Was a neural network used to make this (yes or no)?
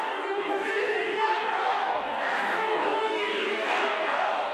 yes